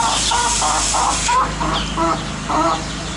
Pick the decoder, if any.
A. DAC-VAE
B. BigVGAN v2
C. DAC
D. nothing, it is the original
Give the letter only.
D